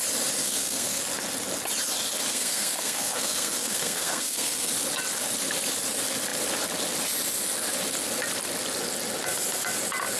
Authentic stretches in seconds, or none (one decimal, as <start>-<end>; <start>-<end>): 0.0-0.4; 1.0-2.3; 4.7-10.2